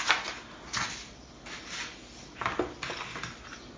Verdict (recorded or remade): recorded